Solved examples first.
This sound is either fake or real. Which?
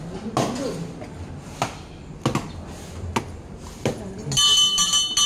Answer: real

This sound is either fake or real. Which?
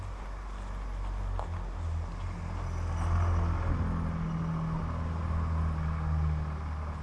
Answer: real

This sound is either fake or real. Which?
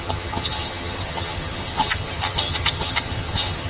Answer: fake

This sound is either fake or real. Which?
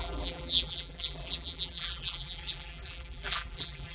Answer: fake